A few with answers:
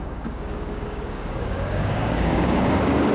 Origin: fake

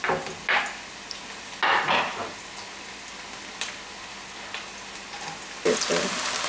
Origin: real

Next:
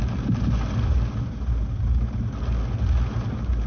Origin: real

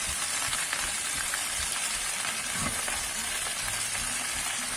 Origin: fake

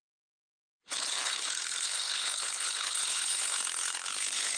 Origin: fake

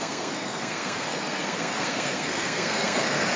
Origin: fake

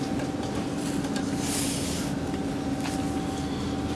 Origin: real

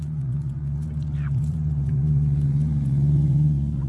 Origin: fake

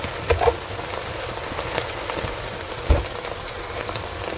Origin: real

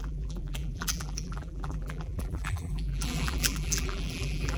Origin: fake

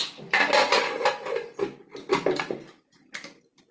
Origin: real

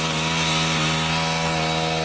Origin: real